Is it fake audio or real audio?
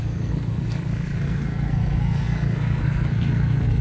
fake